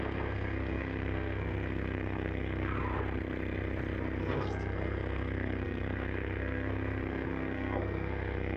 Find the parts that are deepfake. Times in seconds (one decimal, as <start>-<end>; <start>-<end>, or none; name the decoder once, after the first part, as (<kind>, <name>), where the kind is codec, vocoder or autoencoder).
0.0-2.7 (codec, SNAC); 4.2-8.6